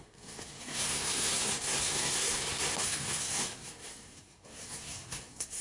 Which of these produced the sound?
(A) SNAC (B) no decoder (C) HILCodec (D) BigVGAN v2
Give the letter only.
A